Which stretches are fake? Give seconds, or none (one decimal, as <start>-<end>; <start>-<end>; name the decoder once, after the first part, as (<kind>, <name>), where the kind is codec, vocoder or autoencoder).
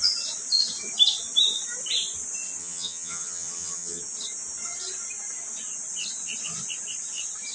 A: 2.6-4.0 (vocoder, HiFi-GAN)